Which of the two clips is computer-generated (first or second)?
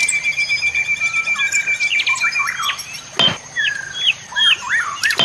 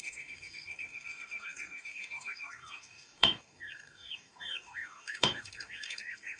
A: second